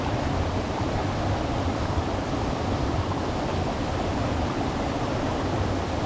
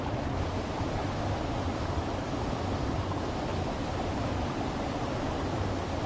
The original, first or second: second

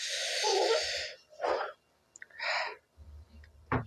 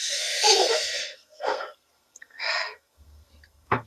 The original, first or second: first